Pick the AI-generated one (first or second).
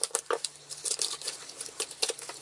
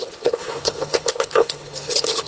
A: second